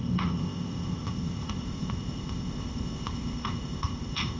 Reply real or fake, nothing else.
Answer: fake